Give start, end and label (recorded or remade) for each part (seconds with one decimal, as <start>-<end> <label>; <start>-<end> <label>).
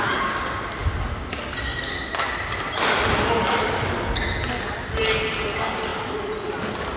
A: 0.0-7.0 recorded